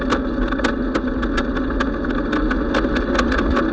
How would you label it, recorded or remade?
recorded